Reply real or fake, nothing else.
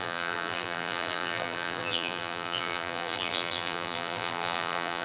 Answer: fake